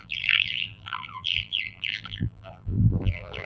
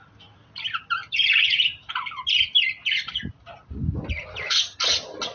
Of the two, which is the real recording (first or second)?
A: second